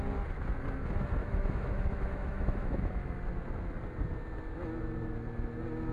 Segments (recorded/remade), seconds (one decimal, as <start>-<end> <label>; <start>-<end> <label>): 0.0-1.2 recorded; 1.2-3.0 remade; 3.0-5.9 recorded